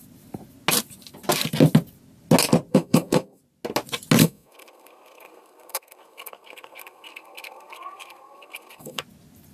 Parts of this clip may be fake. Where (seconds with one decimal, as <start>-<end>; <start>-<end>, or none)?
2.7-3.4; 4.2-9.0